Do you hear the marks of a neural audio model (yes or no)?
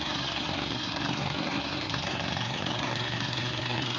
yes